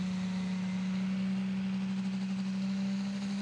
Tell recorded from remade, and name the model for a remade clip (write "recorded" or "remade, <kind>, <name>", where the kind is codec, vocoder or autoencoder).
recorded